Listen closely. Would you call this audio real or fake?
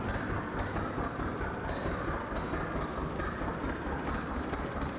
real